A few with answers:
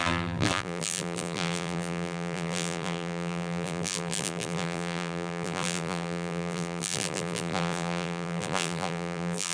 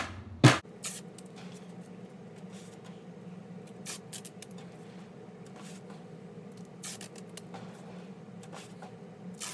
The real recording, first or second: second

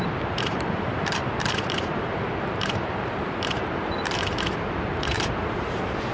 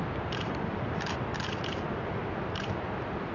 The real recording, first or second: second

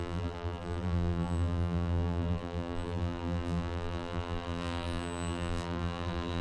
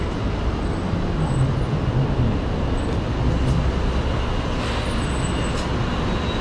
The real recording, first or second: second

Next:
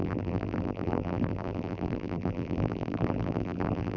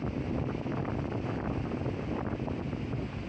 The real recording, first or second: second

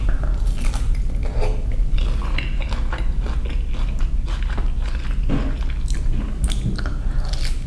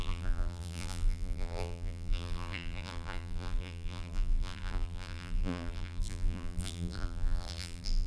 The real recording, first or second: first